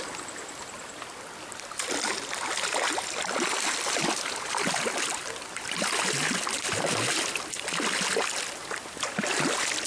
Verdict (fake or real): real